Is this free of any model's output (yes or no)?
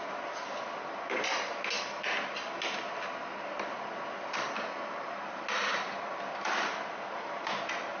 yes